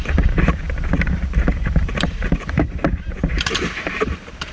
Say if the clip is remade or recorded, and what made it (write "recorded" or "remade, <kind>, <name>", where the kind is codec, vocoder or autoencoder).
remade, vocoder, BigVGAN v2